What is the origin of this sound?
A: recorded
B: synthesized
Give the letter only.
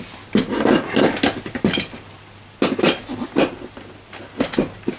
A